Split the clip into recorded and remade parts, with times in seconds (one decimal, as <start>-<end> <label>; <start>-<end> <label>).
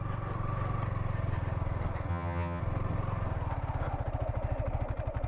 0.0-2.1 recorded; 2.1-2.6 remade; 2.6-5.3 recorded